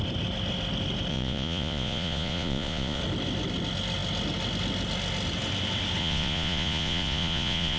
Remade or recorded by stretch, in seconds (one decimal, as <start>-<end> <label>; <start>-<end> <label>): 0.0-1.1 recorded; 1.1-3.0 remade; 3.0-6.0 recorded; 6.0-7.8 remade